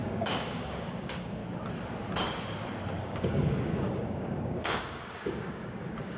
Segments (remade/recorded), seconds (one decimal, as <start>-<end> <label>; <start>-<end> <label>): 0.0-1.4 remade; 1.4-3.0 recorded; 3.0-6.2 remade